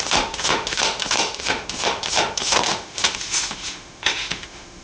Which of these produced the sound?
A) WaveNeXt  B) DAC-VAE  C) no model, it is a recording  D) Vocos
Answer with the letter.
B